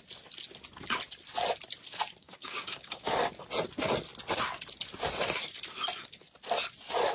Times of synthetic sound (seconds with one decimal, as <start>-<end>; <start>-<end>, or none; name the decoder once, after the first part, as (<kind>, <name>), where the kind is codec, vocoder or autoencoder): 2.2-3.1 (codec, DAC)